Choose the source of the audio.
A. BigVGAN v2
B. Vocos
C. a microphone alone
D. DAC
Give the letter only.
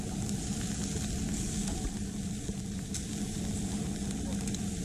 C